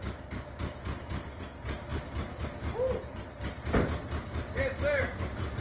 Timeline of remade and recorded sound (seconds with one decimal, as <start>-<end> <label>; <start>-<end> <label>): 0.0-5.6 recorded